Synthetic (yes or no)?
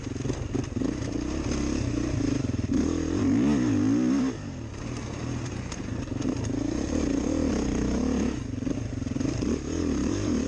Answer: yes